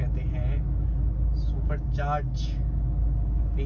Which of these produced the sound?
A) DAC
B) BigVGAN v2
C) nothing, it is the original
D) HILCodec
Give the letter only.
C